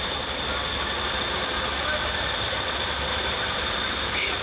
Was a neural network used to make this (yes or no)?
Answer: no